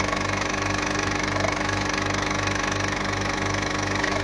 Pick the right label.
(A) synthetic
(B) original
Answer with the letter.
A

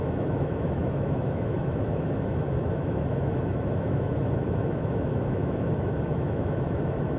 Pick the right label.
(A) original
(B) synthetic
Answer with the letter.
B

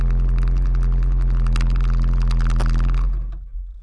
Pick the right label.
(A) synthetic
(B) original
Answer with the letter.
B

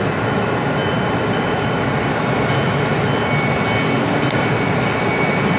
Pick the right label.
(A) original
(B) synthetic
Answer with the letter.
A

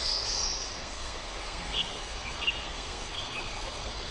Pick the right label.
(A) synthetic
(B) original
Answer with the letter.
A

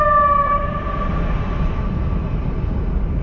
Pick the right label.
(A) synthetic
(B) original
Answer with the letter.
B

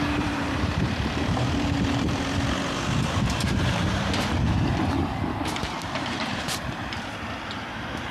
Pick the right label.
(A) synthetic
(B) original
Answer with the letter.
A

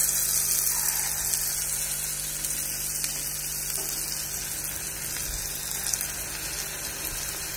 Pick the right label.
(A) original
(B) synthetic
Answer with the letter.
A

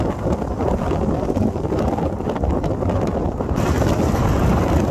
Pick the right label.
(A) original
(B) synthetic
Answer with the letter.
A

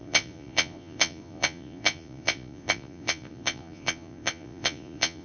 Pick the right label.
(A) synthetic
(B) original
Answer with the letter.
A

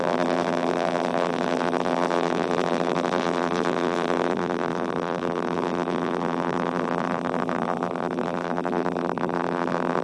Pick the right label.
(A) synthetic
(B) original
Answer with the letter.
A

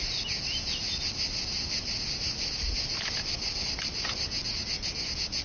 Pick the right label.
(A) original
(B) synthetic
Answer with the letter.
A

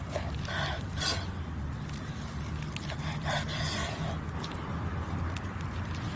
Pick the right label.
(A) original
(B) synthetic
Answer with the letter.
A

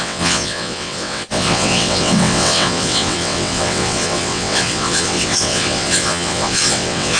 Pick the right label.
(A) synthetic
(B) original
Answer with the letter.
A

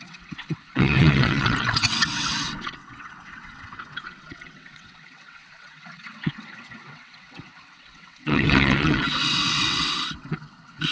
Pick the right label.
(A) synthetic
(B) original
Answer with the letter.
A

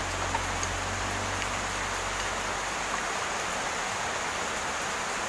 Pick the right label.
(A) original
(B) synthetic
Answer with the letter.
A